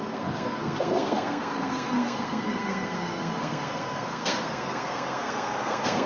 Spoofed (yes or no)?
yes